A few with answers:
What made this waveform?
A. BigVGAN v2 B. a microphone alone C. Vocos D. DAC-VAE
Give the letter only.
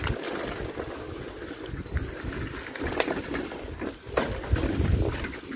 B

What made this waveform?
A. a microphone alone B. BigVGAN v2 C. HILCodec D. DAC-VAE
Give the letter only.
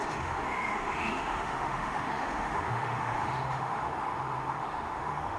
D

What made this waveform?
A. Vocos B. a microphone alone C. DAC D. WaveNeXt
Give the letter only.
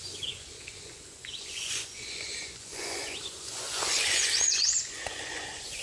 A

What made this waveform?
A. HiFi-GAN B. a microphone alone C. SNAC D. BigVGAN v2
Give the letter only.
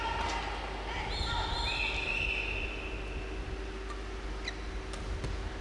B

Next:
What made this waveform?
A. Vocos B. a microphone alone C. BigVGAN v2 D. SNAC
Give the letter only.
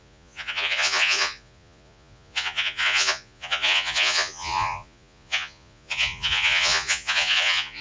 A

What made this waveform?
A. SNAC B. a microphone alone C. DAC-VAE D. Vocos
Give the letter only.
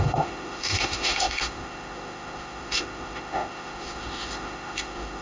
C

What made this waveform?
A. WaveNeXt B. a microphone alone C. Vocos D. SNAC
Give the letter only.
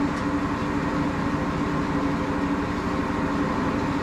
B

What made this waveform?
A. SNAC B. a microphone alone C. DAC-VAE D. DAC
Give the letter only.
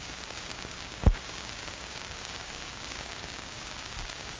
D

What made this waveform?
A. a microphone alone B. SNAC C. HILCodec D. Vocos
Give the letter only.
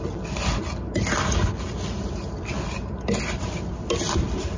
A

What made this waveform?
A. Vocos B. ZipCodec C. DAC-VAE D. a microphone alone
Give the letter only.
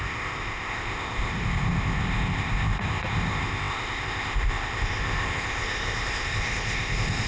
B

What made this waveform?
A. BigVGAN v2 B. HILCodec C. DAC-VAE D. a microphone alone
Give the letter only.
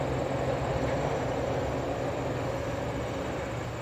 D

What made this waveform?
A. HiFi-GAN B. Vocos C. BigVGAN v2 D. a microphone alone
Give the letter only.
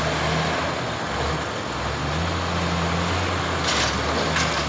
D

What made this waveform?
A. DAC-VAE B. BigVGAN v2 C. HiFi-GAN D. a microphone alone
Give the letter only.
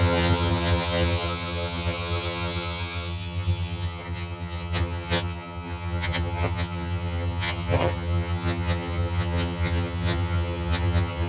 C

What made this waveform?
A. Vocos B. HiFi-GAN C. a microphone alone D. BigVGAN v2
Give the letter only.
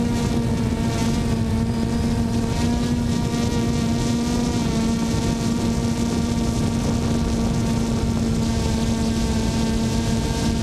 C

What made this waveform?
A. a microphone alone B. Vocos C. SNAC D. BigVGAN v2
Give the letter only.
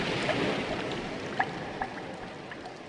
A